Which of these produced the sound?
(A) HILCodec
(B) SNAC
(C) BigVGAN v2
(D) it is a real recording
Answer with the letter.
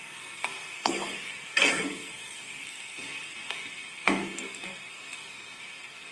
B